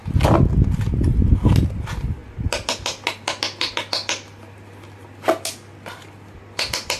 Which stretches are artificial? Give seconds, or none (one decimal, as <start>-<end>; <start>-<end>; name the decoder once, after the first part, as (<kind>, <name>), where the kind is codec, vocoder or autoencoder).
none